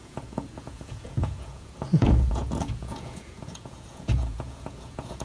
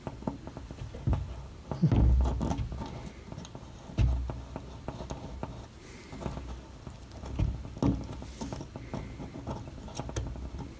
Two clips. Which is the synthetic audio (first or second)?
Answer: first